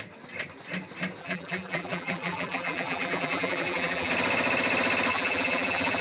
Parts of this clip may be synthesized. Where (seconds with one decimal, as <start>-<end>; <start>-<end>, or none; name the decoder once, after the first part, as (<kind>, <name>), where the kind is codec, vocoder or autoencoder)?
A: 1.2-4.1 (vocoder, BigVGAN v2); 5.1-6.0